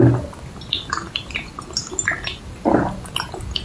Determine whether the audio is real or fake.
real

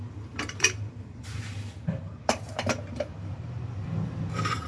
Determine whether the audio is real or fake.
fake